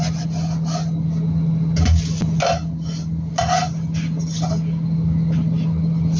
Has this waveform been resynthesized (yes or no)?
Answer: no